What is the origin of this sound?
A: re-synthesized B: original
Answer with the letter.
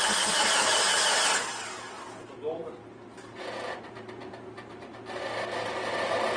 B